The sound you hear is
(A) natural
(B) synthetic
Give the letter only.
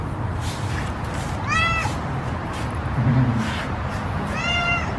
B